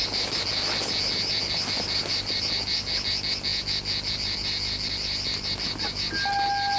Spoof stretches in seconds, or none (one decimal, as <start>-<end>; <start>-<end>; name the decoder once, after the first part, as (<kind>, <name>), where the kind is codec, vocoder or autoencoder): none